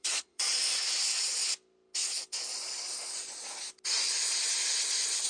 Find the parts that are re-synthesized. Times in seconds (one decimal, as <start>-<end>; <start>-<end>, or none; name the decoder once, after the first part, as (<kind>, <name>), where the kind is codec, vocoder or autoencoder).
0.0-0.6 (vocoder, Vocos)